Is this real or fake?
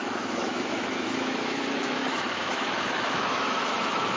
fake